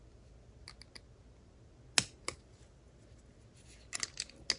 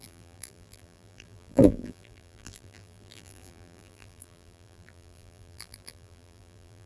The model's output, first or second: second